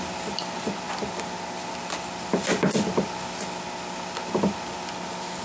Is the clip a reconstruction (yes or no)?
no